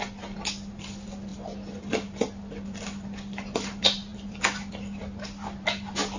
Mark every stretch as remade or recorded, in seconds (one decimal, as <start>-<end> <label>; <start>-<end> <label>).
0.0-6.2 recorded